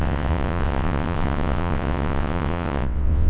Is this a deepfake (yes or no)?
yes